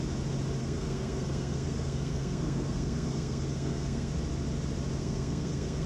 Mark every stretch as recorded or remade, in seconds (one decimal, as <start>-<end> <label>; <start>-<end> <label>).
0.0-0.6 recorded; 0.6-4.1 remade; 4.1-5.0 recorded; 5.0-5.9 remade